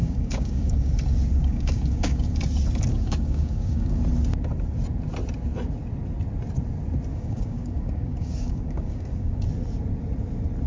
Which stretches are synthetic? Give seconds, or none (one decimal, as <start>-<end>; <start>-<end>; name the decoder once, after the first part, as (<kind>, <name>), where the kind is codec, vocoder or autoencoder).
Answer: 0.0-0.9 (codec, DAC); 1.4-2.4; 2.9-4.0; 7.1-9.4